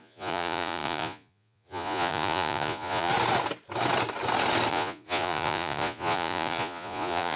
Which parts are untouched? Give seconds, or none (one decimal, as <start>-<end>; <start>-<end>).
3.1-4.7